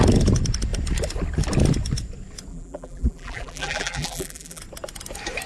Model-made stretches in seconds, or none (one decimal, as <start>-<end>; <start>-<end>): 2.5-4.6